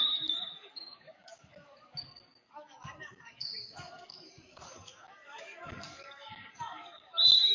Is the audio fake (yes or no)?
yes